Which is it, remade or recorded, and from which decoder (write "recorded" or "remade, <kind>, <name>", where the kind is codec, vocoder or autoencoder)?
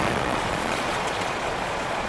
remade, vocoder, Vocos